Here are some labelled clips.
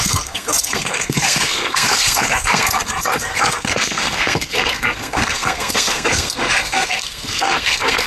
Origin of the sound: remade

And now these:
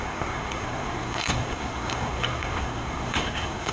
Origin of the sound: remade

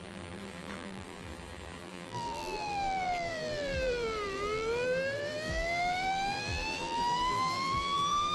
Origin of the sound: remade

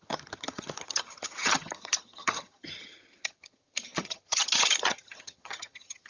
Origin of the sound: remade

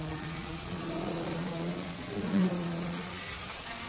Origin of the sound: remade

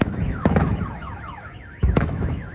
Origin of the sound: remade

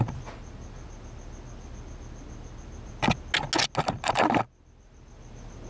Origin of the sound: recorded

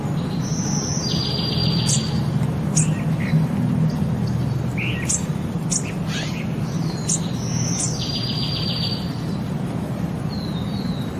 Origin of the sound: recorded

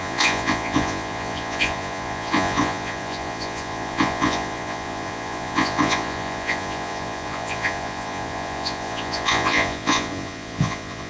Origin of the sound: remade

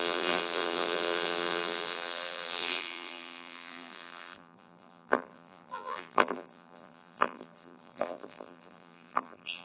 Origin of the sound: remade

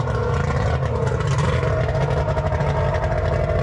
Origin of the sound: recorded